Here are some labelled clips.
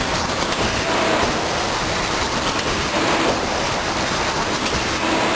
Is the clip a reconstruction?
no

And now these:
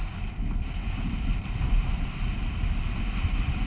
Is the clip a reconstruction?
no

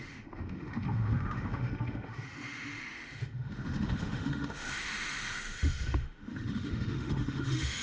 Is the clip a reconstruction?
yes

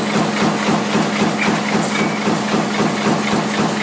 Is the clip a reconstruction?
no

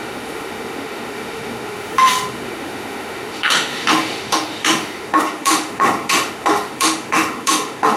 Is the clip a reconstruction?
yes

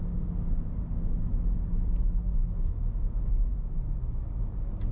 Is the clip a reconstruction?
no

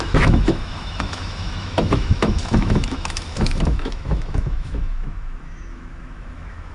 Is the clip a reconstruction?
yes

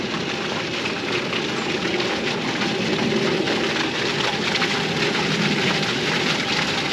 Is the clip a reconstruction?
no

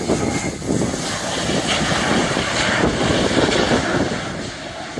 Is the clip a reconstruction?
no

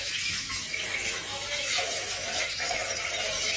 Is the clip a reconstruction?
yes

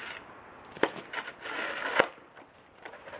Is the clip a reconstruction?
no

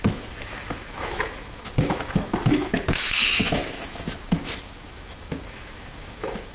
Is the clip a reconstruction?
yes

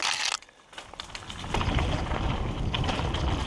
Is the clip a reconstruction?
no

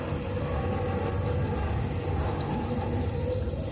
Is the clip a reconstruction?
no